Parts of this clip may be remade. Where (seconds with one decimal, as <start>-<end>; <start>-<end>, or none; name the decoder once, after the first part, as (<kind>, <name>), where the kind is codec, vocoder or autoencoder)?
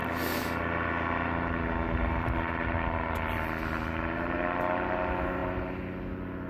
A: none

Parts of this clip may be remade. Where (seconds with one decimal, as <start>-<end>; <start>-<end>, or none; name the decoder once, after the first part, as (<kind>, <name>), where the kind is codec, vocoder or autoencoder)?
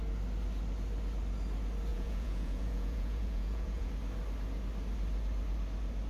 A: 1.9-3.9 (vocoder, Vocos)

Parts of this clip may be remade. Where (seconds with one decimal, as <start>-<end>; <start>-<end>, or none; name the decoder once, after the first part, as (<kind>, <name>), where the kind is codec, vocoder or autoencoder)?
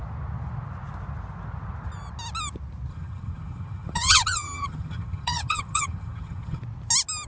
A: 2.9-6.6 (vocoder, HiFi-GAN)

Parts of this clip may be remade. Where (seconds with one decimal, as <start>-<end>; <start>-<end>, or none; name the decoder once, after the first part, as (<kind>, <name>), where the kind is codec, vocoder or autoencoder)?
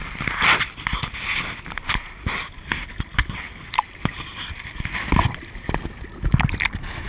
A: none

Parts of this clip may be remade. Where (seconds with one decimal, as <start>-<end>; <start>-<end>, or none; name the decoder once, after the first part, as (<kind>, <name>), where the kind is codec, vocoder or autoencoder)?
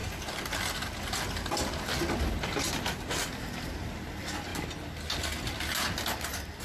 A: none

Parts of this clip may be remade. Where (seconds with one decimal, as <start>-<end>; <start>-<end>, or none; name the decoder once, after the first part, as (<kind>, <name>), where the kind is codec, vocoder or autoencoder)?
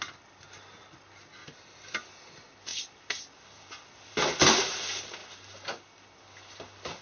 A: none